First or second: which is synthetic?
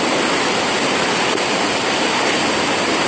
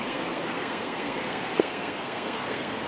second